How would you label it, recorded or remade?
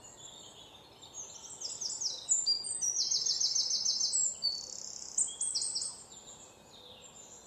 recorded